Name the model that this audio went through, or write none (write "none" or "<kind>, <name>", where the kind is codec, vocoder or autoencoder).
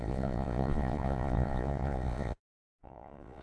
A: vocoder, Vocos